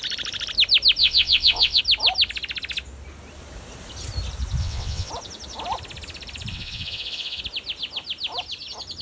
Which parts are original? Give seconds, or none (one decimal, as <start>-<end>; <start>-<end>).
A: 0.0-1.0; 1.8-4.6; 5.1-6.5; 7.4-9.0